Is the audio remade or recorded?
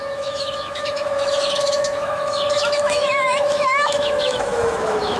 remade